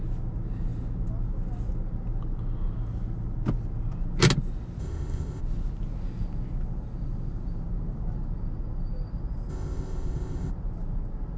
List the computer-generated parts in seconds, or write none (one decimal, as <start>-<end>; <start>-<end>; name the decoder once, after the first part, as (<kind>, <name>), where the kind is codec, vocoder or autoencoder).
4.8-5.4 (codec, ZipCodec); 9.5-10.5

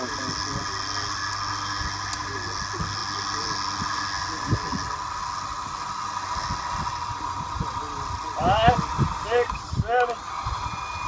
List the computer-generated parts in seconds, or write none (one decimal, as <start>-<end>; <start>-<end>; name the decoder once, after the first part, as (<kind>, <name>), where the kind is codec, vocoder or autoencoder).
none

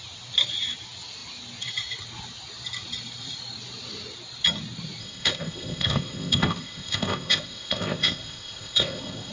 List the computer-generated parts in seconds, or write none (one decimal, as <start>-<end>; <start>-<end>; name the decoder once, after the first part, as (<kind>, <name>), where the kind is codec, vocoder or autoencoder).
5.0-9.3 (codec, ZipCodec)